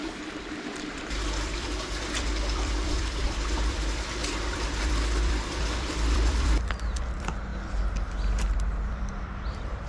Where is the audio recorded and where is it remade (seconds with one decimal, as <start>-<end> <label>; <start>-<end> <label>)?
0.0-0.5 recorded; 0.5-7.5 remade; 7.5-8.4 recorded; 8.4-9.9 remade